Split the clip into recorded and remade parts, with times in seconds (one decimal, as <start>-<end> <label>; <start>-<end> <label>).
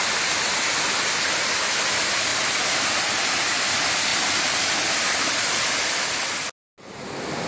0.0-2.3 recorded; 2.3-3.6 remade; 3.6-4.1 recorded; 4.1-5.7 remade; 5.7-7.5 recorded